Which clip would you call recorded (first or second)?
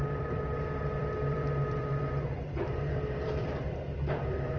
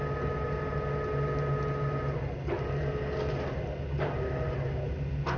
second